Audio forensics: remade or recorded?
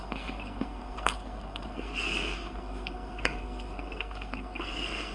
remade